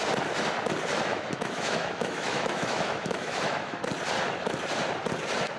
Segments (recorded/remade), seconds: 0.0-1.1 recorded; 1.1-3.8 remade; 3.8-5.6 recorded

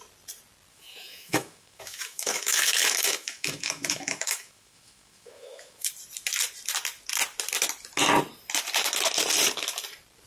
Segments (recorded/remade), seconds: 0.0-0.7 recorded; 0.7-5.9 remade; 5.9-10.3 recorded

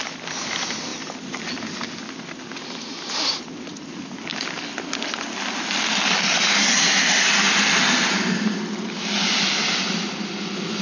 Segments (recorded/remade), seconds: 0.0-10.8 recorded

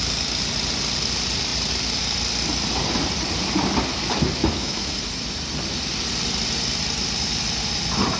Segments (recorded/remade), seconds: 0.0-4.4 recorded; 4.4-5.0 remade; 5.0-8.2 recorded

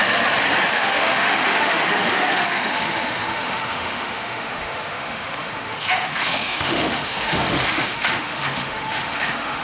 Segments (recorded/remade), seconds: 0.0-0.7 recorded; 0.7-9.6 remade